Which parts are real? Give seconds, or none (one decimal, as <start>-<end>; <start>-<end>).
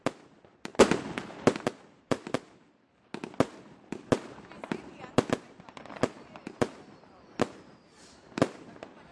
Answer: 0.0-9.1